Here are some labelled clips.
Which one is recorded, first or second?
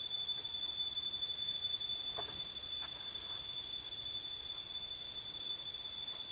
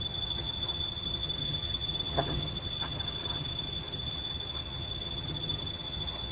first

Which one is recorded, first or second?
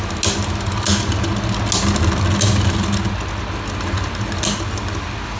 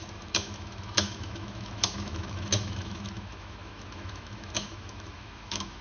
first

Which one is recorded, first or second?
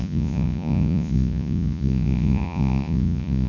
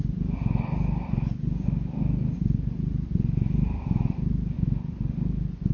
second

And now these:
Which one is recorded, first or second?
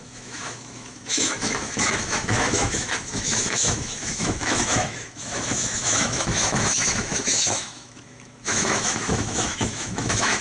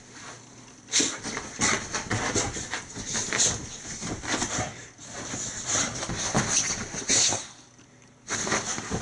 second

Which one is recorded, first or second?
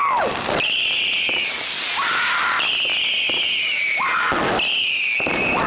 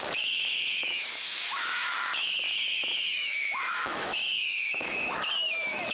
first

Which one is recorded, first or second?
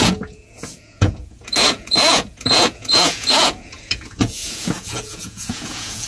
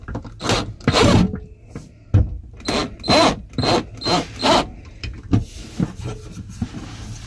second